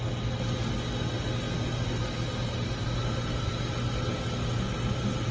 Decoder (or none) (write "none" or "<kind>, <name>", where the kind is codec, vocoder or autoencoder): none